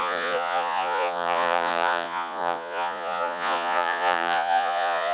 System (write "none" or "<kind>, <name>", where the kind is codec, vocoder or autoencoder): vocoder, Vocos